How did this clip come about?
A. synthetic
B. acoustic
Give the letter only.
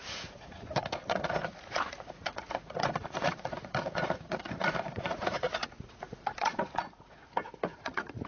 A